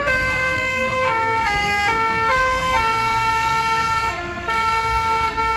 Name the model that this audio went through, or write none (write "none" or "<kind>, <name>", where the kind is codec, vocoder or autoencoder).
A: codec, SNAC